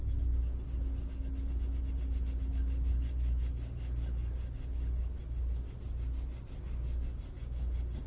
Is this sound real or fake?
real